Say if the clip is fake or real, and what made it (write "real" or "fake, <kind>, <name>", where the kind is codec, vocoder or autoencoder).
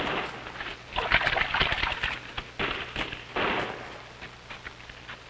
real